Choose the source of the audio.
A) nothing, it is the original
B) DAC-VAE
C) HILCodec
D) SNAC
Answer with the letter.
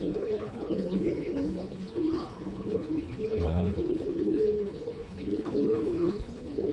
C